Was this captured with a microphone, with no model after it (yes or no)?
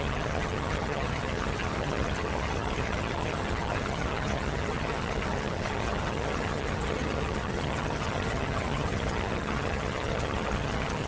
no